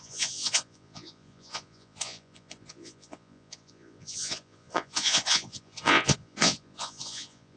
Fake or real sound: fake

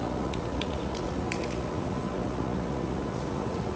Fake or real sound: fake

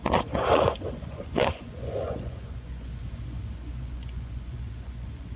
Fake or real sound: fake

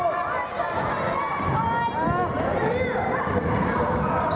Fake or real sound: real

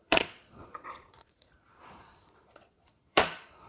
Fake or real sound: fake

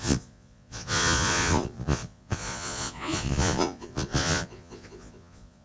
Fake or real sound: fake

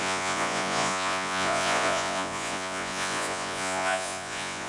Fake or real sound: fake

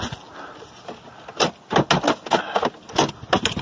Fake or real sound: real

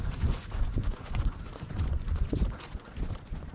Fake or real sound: fake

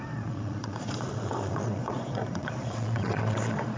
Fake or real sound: fake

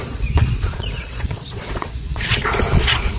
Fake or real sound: fake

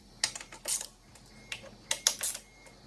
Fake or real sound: real